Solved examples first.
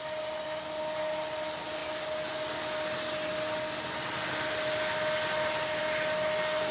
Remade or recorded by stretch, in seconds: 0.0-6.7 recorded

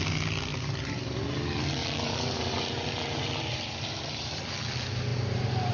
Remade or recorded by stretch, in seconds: 0.0-0.5 recorded; 0.5-1.2 remade; 1.2-1.8 recorded; 1.8-4.5 remade; 4.5-5.1 recorded; 5.1-5.7 remade